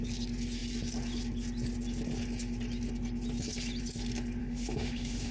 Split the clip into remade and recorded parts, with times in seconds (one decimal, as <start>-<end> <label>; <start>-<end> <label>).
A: 0.0-4.4 recorded; 4.4-5.3 remade